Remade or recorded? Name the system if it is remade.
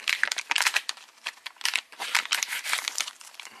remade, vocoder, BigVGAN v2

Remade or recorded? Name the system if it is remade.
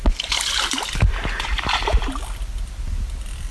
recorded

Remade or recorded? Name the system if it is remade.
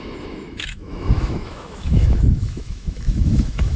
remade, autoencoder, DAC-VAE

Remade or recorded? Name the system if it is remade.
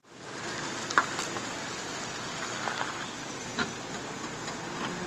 recorded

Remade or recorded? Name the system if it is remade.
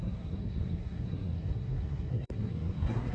remade, codec, SNAC